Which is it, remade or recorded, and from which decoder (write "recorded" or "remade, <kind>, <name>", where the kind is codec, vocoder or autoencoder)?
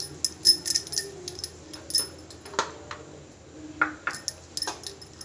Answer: recorded